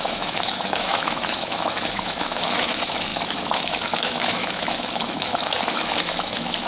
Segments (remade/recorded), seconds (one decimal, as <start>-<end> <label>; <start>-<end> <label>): 0.0-6.7 remade